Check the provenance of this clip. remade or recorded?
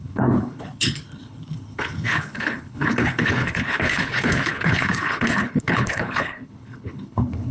remade